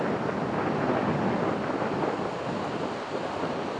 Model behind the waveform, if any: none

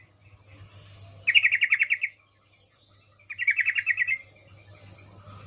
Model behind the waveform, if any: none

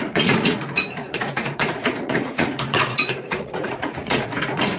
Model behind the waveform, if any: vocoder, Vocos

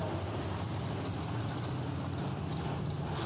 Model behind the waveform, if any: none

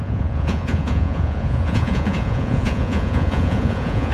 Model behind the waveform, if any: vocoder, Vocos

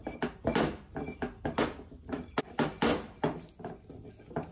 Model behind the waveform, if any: none